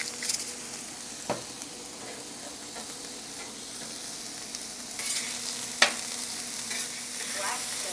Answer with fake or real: real